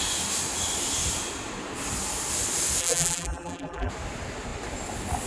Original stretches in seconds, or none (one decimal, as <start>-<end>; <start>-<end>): 0.0-2.8; 3.9-5.3